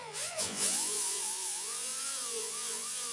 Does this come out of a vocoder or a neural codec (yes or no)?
yes